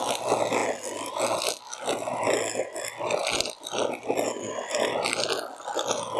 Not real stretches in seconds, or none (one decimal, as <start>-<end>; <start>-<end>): none